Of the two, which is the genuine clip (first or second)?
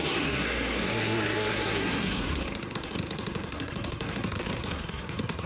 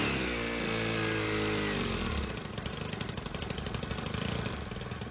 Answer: second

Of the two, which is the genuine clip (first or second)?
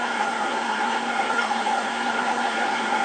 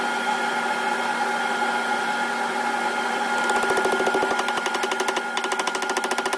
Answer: second